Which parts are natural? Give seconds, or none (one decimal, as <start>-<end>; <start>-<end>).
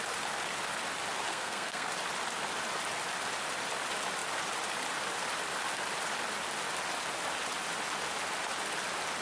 0.0-1.3; 1.9-9.2